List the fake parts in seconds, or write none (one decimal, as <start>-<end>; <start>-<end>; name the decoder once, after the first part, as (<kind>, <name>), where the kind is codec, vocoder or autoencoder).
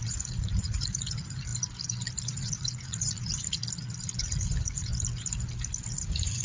0.0-1.5 (vocoder, Vocos); 2.2-3.6; 4.2-4.9; 5.9-6.4